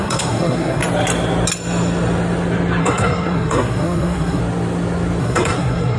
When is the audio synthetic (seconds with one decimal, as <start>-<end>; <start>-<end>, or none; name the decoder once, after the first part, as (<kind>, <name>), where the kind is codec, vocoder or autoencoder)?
0.0-0.8 (codec, SNAC); 2.8-4.4; 5.2-6.0